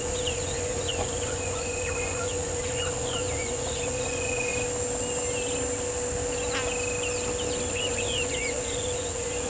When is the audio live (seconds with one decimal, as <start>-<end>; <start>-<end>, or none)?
4.5-7.7